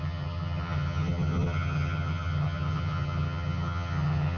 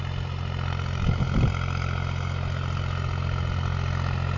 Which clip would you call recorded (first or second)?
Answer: second